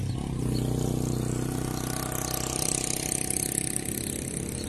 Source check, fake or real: real